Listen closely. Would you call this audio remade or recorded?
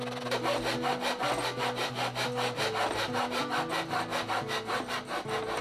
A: recorded